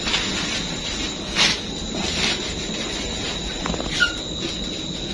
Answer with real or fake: real